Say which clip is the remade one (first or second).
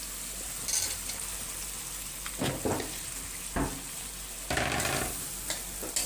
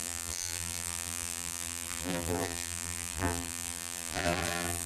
second